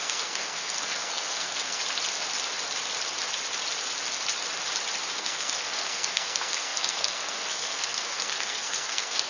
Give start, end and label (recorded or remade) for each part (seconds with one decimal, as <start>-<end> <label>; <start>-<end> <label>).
0.0-1.8 remade; 1.8-5.1 recorded; 5.1-9.3 remade